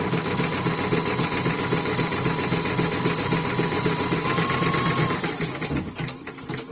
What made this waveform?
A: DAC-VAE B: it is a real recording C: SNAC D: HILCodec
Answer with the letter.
B